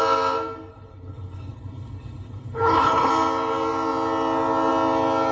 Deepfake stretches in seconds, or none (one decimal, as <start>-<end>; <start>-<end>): 0.7-3.1